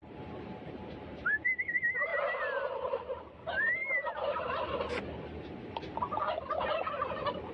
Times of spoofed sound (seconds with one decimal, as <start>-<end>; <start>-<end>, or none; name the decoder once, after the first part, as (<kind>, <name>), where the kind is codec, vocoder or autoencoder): 0.0-2.1 (vocoder, BigVGAN v2); 2.7-3.8; 6.9-7.5